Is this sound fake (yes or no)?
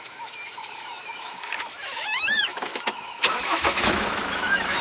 yes